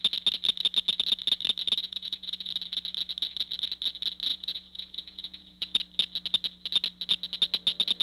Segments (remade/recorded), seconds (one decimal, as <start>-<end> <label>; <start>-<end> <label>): 0.0-1.8 recorded; 1.8-2.5 remade; 2.5-4.3 recorded; 4.3-5.8 remade; 5.8-8.0 recorded